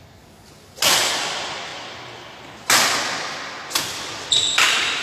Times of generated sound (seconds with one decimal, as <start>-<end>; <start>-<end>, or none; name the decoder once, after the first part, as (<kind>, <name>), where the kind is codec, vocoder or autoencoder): none